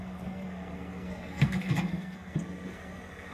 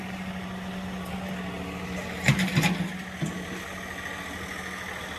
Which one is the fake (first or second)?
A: first